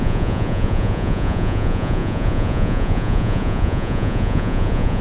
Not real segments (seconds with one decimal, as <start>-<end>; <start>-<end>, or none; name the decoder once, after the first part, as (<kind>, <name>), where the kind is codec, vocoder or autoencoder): 0.0-5.0 (vocoder, Vocos)